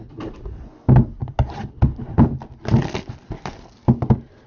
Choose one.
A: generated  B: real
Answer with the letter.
B